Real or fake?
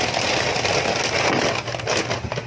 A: real